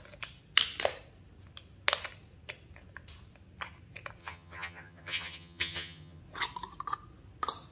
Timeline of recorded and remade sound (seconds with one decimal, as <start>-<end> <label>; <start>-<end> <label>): 0.0-4.2 recorded; 4.2-6.2 remade; 6.2-7.7 recorded